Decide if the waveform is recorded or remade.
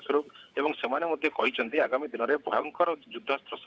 remade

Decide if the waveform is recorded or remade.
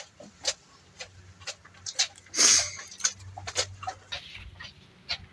recorded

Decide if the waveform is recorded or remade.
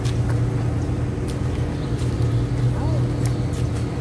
recorded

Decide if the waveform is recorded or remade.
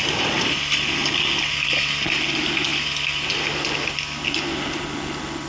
recorded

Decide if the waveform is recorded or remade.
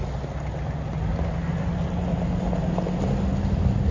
recorded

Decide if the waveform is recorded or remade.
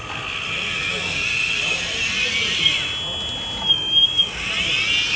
recorded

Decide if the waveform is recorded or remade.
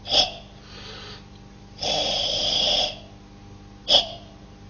recorded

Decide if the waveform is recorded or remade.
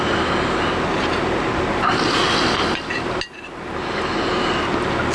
recorded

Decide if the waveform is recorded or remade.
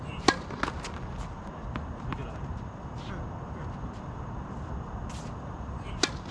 recorded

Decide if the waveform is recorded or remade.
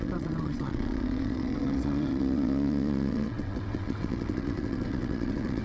remade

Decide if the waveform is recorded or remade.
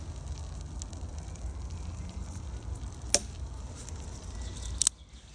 recorded